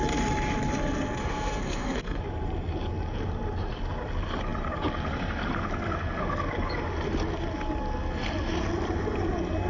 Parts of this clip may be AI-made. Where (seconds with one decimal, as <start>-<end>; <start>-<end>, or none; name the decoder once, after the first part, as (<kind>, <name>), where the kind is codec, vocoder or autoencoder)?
1.2-2.2 (codec, SNAC)